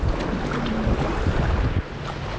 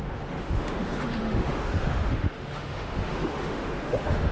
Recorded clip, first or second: first